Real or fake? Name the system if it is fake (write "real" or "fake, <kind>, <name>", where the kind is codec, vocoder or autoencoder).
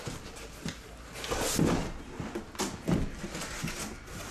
real